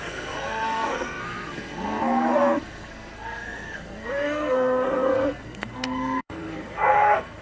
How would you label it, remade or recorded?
remade